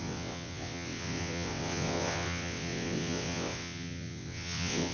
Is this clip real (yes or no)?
no